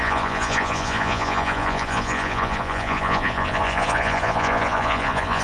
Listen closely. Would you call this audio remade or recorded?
remade